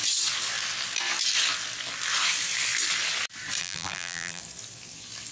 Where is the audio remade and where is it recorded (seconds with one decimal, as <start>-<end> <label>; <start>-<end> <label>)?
0.0-3.6 recorded; 3.6-4.4 remade; 4.4-5.3 recorded